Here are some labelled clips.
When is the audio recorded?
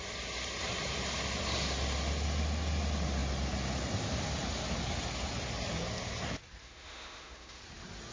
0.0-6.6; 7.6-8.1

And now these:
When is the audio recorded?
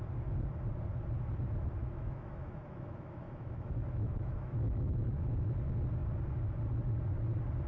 0.0-1.8; 5.1-7.7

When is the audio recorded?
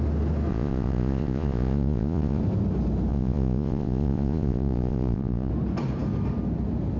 0.0-0.5; 2.4-3.1; 5.5-7.0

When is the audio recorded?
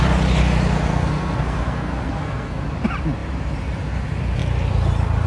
0.0-0.9; 2.6-5.3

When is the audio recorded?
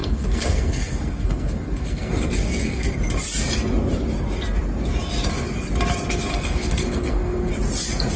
3.0-6.3; 7.5-8.2